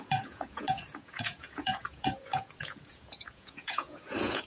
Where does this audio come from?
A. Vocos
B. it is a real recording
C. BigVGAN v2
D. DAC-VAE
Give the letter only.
A